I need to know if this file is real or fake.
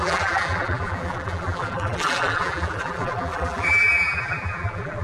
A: fake